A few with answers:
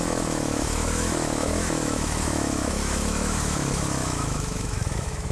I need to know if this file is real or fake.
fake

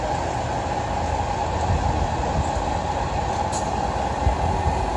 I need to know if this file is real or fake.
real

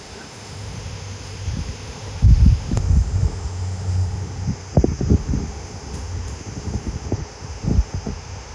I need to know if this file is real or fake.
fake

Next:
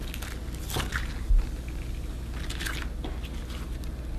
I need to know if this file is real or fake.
real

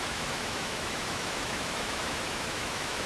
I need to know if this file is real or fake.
fake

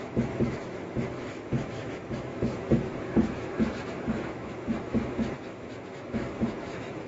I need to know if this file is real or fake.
fake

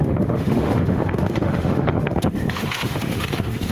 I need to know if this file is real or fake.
fake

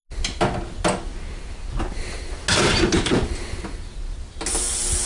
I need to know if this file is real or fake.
real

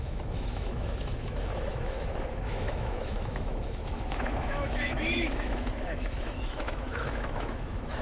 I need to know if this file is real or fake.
fake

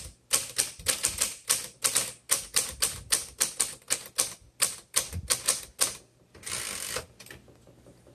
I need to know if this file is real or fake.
real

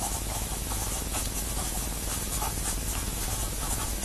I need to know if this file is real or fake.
fake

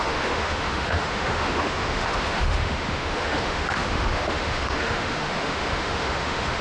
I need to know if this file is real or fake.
fake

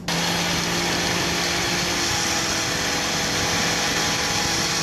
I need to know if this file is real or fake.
real